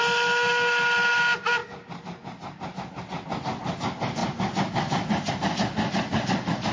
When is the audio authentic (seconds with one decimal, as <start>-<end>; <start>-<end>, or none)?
0.0-6.7